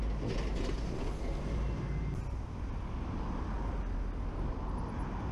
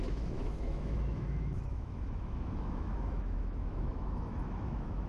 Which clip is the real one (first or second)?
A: first